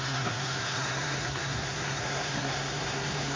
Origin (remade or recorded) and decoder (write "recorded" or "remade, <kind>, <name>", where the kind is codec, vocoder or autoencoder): remade, codec, SNAC